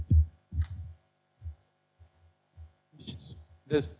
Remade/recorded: recorded